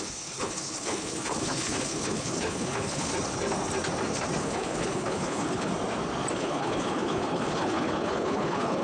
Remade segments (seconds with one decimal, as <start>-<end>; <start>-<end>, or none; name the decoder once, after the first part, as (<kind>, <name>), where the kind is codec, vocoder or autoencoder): 0.0-3.1 (codec, HILCodec); 4.4-5.7; 6.3-8.8